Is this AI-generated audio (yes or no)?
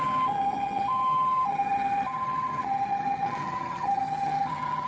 yes